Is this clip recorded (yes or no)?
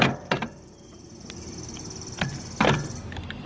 yes